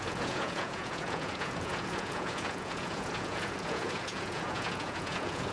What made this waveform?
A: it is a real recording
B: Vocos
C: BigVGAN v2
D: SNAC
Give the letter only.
B